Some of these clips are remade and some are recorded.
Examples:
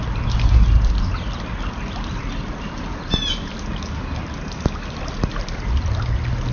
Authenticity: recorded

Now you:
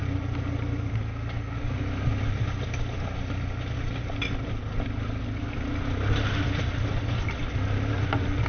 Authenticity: recorded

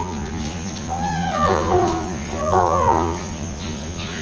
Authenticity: remade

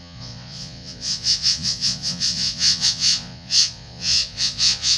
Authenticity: remade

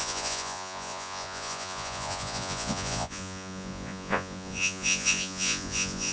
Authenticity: remade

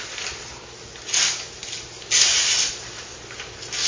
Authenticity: recorded